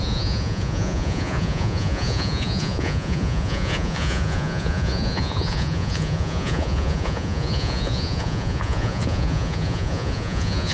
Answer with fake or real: fake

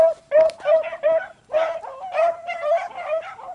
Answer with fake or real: fake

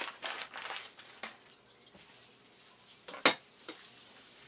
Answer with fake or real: real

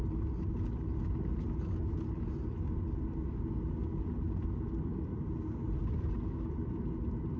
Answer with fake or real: real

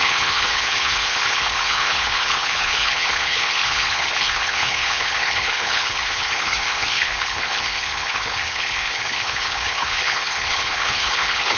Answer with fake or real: fake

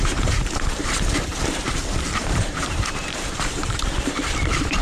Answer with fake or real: fake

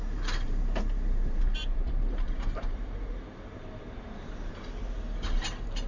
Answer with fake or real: fake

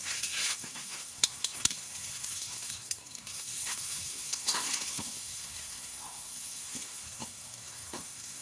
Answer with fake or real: fake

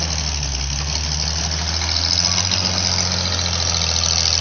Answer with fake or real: real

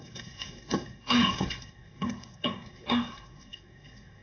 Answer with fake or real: fake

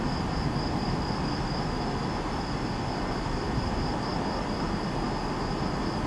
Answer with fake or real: real